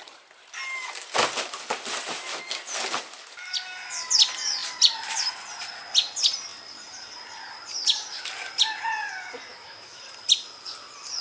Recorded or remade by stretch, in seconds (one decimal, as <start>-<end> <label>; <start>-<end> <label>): 0.0-9.5 recorded; 9.5-10.0 remade; 10.0-11.2 recorded